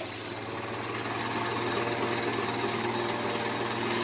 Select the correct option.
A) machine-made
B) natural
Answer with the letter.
B